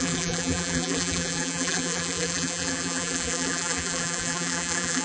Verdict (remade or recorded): remade